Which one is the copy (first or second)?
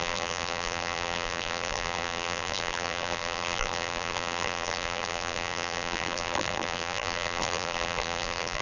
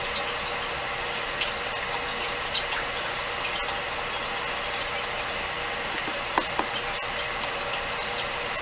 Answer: first